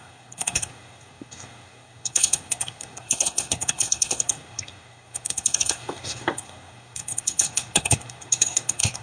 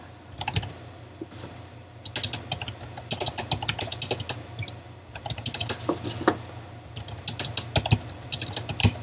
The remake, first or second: first